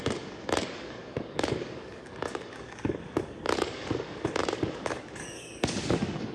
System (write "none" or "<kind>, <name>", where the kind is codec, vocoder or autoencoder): codec, DAC